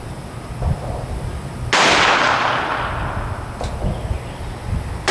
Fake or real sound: real